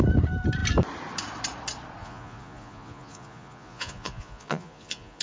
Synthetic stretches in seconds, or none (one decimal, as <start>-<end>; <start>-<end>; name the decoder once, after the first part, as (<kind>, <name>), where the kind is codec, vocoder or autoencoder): 2.0-5.2 (vocoder, Vocos)